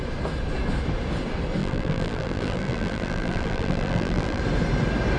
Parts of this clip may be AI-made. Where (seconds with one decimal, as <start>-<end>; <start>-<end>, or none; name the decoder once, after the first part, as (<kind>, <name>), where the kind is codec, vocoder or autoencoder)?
1.6-4.4 (vocoder, BigVGAN v2)

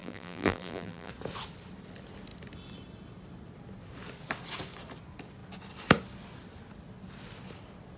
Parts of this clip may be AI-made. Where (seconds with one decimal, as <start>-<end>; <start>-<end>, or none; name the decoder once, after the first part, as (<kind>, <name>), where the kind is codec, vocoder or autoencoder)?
0.0-1.1 (vocoder, BigVGAN v2)

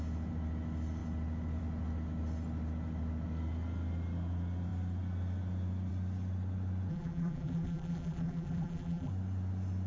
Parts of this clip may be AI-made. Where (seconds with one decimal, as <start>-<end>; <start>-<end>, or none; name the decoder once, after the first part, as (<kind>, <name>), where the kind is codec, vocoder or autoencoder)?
6.9-9.1 (vocoder, BigVGAN v2)

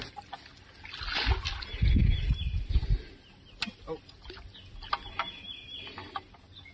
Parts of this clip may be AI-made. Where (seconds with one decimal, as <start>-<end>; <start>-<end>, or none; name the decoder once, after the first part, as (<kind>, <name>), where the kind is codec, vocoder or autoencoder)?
none

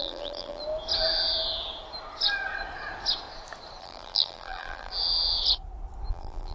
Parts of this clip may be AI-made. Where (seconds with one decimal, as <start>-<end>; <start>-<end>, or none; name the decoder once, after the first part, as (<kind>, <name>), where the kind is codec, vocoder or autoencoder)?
0.0-0.6 (vocoder, BigVGAN v2); 3.8-4.9; 6.1-6.5

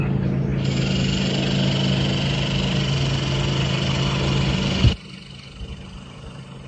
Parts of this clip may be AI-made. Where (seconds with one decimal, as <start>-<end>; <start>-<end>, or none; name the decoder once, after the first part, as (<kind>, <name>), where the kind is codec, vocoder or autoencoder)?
none

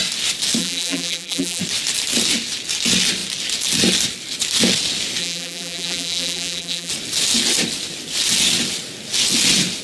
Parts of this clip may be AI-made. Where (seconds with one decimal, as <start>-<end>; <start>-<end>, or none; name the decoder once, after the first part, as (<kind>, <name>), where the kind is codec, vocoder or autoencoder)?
0.6-1.6 (vocoder, BigVGAN v2); 5.2-6.9